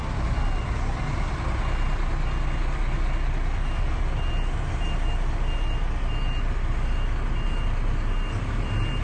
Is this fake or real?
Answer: real